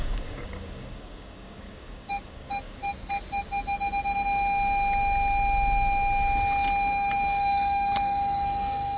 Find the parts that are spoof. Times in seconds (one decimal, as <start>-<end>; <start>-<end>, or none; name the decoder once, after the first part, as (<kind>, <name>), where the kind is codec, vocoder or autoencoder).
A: 0.0-2.8 (codec, DAC); 6.9-9.0